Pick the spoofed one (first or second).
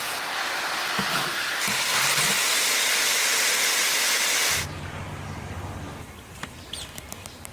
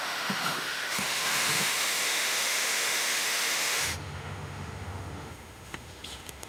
second